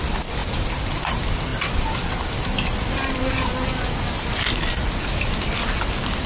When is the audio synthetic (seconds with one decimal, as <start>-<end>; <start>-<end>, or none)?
none

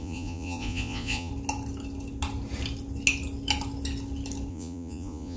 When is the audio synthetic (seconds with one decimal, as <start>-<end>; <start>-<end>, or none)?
0.0-1.3; 4.5-5.4

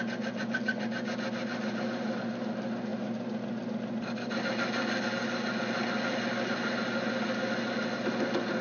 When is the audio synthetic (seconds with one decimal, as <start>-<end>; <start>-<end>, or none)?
none

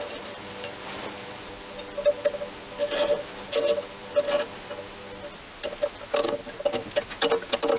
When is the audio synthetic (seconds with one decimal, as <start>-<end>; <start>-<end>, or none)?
none

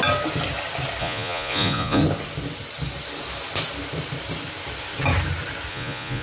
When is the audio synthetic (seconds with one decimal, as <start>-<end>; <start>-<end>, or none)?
1.0-2.0; 5.7-6.2

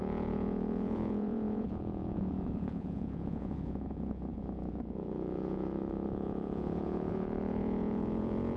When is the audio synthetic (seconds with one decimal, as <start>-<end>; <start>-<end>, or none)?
0.0-8.6

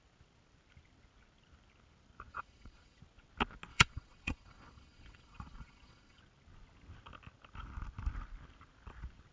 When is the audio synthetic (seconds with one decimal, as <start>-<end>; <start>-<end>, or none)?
2.3-3.0; 3.7-6.2